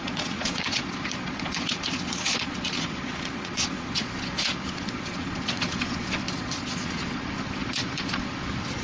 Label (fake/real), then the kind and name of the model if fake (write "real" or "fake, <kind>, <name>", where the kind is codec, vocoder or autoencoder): fake, vocoder, Vocos